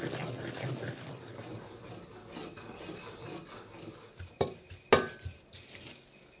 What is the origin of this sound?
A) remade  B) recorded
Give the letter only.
B